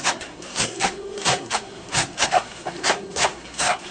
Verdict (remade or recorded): remade